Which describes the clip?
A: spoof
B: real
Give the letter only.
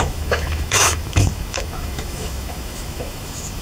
A